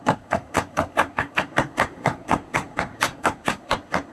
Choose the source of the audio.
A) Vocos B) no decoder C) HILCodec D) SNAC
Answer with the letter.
D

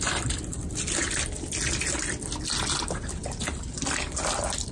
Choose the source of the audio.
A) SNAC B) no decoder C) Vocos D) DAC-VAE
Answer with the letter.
B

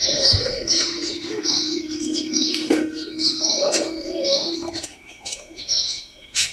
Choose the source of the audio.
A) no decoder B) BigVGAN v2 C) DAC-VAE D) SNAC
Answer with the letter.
C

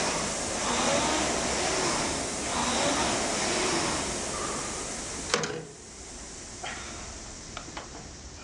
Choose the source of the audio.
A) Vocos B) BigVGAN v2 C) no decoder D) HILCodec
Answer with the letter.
C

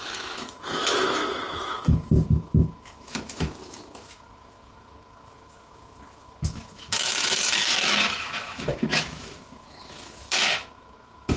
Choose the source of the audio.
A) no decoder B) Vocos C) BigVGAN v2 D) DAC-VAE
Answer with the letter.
D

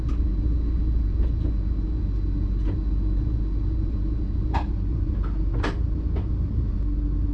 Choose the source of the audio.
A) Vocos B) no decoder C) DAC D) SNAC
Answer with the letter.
B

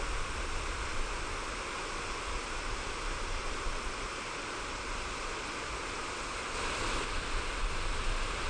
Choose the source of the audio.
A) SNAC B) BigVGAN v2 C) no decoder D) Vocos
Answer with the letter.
C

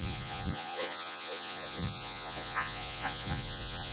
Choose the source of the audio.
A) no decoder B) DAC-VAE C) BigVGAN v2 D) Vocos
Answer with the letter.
D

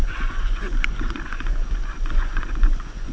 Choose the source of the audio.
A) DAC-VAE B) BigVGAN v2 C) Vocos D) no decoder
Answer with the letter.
C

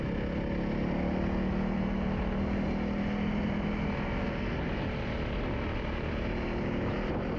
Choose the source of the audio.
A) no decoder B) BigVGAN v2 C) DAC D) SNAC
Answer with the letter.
A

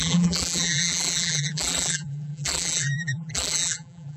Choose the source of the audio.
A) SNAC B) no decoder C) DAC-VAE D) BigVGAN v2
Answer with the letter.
D